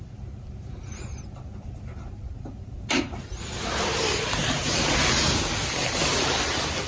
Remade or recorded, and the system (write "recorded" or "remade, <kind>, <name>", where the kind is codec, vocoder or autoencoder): recorded